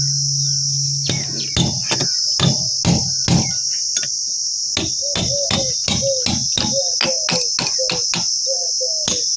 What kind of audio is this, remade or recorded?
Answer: recorded